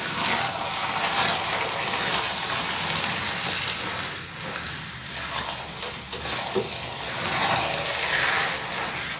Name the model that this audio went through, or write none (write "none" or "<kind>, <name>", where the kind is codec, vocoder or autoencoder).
none